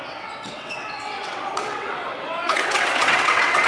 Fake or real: fake